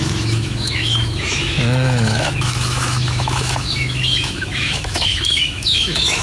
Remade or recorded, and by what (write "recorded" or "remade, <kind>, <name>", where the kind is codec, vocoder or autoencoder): remade, autoencoder, DAC-VAE